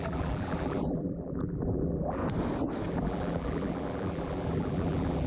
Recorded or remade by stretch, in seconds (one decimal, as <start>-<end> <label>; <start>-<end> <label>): 0.0-2.2 remade; 2.2-2.9 recorded; 2.9-5.3 remade